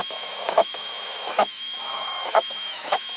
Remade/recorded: remade